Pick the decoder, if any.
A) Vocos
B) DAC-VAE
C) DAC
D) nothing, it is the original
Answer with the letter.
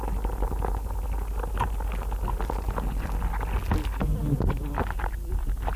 D